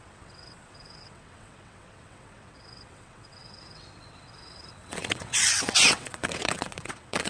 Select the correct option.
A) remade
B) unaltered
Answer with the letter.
A